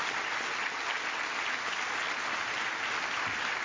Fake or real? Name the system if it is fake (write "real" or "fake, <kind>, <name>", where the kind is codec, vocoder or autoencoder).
real